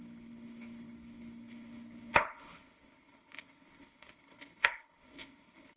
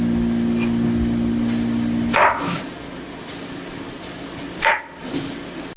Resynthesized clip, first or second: first